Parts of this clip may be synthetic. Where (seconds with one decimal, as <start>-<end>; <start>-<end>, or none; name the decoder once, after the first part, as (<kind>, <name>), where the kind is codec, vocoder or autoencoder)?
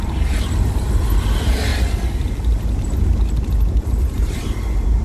0.0-1.7 (vocoder, BigVGAN v2); 3.8-5.0